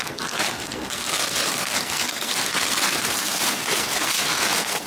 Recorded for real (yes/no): no